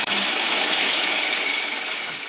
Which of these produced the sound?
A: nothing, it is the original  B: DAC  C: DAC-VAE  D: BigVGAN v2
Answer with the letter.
C